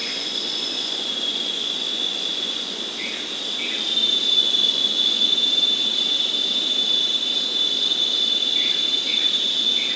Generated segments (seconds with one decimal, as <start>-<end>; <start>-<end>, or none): 0.0-2.8; 4.4-5.3